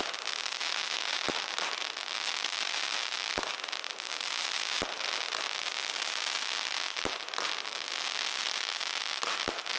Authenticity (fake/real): real